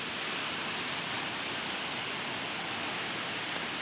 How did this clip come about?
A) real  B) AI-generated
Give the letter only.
A